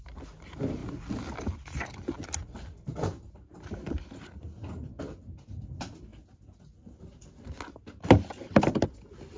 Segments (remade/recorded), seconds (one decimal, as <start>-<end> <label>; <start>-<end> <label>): 0.0-9.4 recorded